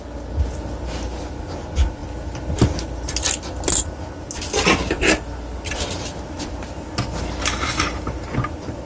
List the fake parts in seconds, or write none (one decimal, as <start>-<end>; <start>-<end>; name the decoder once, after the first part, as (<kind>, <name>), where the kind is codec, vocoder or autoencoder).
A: none

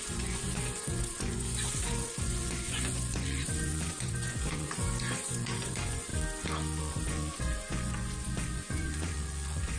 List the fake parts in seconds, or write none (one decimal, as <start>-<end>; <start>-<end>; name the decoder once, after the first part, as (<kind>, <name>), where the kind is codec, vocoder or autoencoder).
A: 0.0-6.1 (vocoder, Vocos); 6.8-9.8

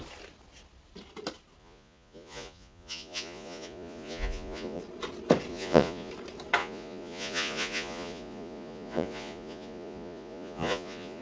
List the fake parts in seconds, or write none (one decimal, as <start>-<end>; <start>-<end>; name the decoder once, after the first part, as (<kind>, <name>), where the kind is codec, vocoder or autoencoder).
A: 1.6-4.8 (vocoder, Vocos); 5.5-6.1; 6.6-11.2

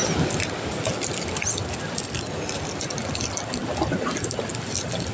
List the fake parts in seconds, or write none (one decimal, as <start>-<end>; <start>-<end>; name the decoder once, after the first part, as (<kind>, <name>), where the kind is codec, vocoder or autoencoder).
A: none